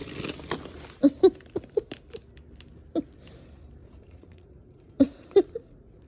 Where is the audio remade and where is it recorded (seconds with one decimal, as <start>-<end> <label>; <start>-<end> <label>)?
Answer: 0.0-3.8 recorded; 3.8-6.1 remade